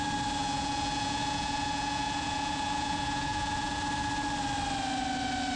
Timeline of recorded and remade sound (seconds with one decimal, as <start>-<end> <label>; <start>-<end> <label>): 0.0-0.4 recorded; 0.4-3.8 remade; 3.8-5.6 recorded